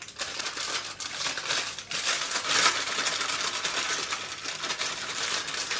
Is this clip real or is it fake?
real